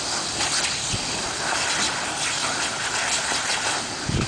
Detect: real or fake real